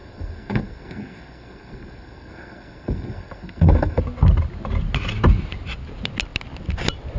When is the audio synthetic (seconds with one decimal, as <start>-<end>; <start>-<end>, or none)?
0.0-4.0